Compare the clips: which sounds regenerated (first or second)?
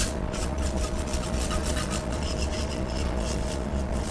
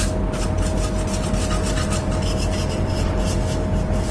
first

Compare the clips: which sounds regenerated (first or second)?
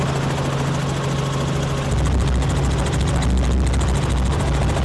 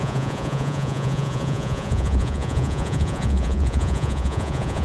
second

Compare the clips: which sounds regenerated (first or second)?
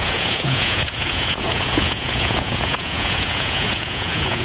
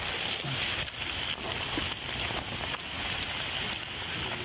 first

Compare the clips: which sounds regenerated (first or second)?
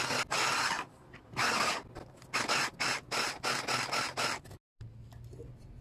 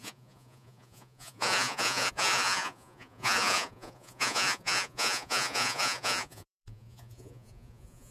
second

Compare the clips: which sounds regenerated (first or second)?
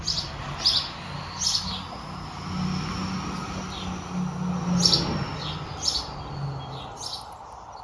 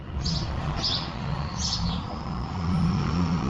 second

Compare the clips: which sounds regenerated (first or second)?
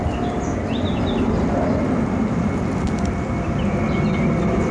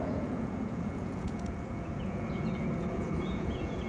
second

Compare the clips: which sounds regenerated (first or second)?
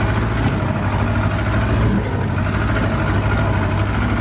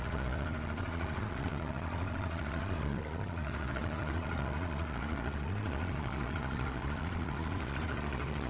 second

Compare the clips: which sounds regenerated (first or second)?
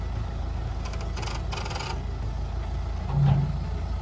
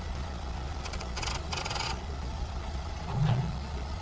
second